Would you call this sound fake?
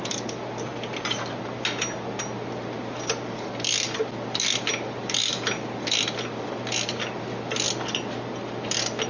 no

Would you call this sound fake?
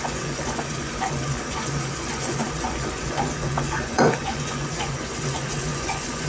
yes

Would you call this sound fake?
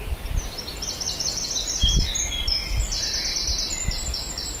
no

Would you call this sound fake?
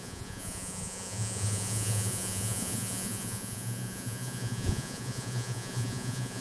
yes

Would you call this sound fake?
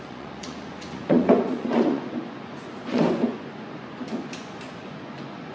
yes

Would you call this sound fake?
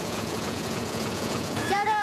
yes